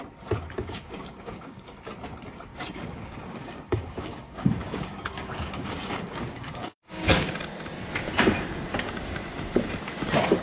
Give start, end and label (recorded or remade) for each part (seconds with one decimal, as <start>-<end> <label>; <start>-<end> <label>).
0.0-0.6 recorded; 0.6-1.8 remade; 1.8-2.5 recorded; 2.5-7.3 remade; 7.3-10.4 recorded